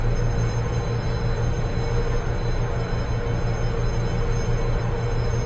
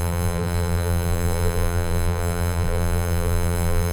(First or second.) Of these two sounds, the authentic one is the first